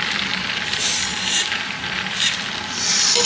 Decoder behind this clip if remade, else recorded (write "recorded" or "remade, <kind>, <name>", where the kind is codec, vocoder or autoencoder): remade, vocoder, BigVGAN v2